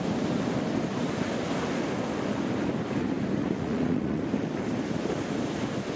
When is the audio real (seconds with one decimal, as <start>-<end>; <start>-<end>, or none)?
0.0-3.4; 4.2-6.0